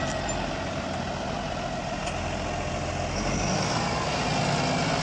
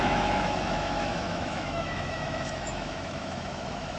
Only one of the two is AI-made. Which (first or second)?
second